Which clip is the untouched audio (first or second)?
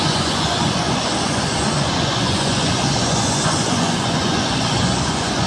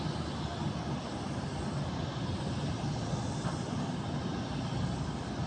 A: second